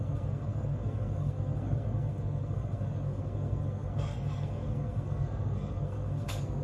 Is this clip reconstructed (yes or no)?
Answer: yes